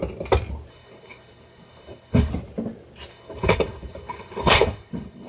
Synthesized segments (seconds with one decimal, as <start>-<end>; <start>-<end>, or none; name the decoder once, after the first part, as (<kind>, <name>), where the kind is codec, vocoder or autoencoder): 0.7-2.3 (codec, HILCodec); 3.1-5.3